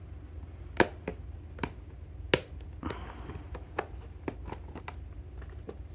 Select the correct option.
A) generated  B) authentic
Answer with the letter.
B